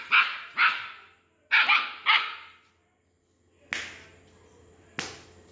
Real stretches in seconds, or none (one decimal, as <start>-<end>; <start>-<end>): 0.0-5.5

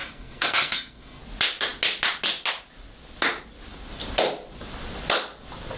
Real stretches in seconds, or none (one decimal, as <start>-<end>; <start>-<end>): 1.2-5.8

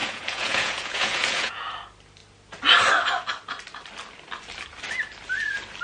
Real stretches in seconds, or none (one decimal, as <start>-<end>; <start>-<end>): 1.7-5.8

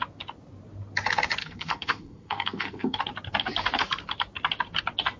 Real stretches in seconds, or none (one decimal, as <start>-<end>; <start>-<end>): 0.0-1.4; 3.0-5.2

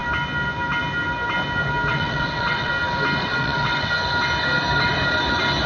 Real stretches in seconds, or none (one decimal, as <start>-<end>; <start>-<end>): 0.0-1.9; 2.7-3.2; 3.9-5.7